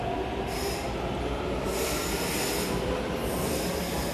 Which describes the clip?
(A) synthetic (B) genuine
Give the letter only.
B